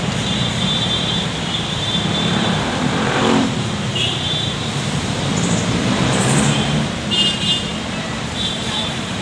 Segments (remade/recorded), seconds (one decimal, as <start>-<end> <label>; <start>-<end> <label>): 0.0-7.7 remade; 7.7-8.3 recorded; 8.3-9.2 remade